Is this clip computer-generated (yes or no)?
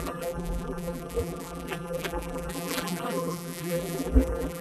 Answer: yes